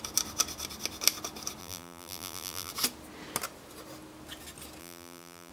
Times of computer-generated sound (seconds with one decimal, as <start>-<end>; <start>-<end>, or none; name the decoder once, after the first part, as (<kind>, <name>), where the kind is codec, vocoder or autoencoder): 1.6-2.7 (vocoder, BigVGAN v2); 4.8-5.5

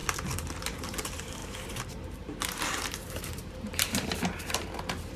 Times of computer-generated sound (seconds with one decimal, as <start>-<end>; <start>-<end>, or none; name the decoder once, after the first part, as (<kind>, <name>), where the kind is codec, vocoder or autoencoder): 1.4-4.5 (vocoder, BigVGAN v2)

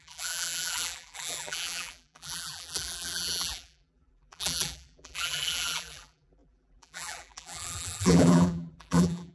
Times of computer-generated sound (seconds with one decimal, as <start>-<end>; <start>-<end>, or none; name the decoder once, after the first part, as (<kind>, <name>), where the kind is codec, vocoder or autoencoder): 0.0-9.3 (vocoder, BigVGAN v2)

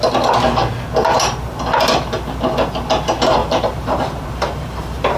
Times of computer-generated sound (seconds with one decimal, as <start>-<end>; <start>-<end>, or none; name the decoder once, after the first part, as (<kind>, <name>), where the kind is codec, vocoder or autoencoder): 3.4-5.2 (vocoder, BigVGAN v2)